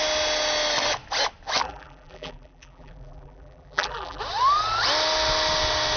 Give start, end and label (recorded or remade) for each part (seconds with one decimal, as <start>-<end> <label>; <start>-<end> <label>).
0.0-1.6 recorded; 1.6-4.2 remade; 4.2-6.0 recorded